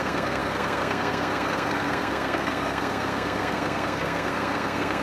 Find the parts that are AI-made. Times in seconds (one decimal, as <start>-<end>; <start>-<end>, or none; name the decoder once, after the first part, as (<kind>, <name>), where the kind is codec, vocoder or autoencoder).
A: 0.0-5.0 (codec, SNAC)